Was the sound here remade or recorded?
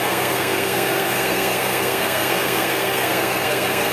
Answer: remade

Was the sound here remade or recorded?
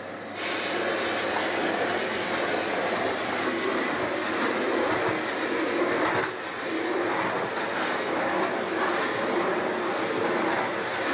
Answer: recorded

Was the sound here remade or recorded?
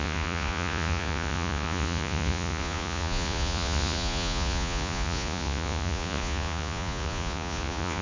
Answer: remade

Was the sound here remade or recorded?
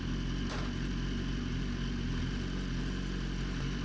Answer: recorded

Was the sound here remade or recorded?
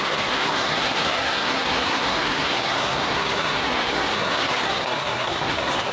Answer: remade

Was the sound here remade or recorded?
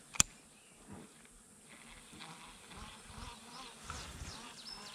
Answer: recorded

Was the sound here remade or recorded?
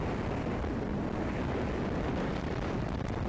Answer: recorded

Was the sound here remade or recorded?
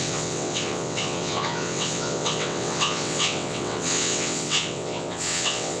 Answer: remade